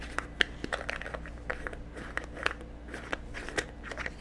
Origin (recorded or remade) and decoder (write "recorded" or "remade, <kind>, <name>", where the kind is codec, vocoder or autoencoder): recorded